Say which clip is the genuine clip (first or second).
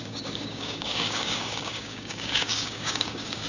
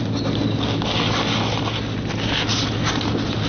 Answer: second